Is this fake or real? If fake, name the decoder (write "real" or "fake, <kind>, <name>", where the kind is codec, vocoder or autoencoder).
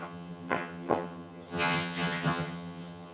fake, vocoder, HiFi-GAN